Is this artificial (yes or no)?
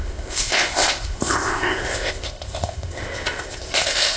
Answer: yes